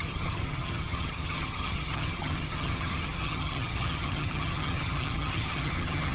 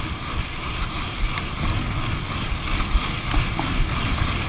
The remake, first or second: first